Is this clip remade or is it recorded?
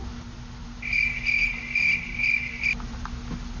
recorded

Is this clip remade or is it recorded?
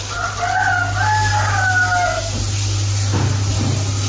recorded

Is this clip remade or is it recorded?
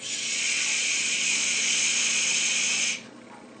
remade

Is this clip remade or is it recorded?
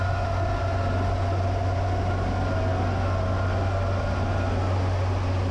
recorded